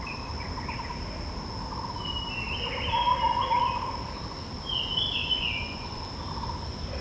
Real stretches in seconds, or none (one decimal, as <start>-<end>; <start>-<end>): 0.0-5.2; 6.0-7.0